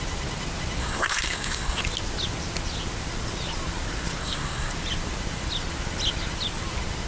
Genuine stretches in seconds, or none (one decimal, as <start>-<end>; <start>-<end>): 0.0-0.8; 1.8-4.2; 4.7-7.1